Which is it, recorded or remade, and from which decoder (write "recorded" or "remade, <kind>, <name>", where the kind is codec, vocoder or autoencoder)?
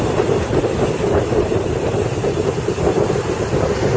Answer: remade, vocoder, BigVGAN v2